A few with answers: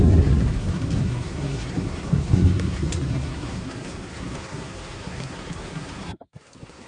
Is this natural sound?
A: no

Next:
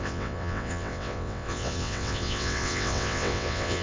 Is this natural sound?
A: no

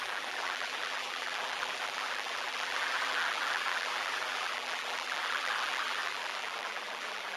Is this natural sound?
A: no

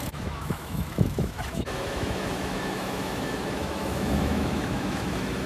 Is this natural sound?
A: no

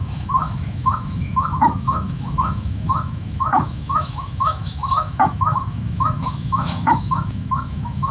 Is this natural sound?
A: no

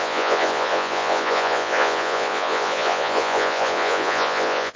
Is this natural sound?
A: no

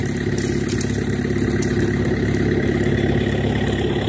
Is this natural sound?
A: yes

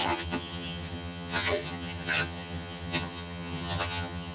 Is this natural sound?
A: no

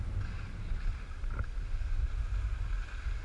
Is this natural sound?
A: yes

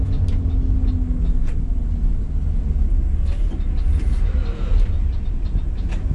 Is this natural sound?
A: yes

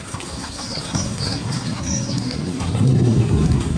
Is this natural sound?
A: no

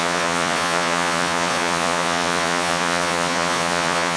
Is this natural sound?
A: no